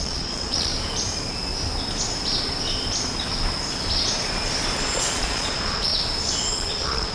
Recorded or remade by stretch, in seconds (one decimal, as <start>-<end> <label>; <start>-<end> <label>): 0.0-0.7 remade; 0.7-4.8 recorded; 4.8-5.9 remade; 5.9-6.5 recorded; 6.5-7.1 remade